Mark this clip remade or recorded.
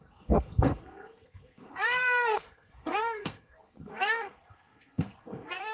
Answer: remade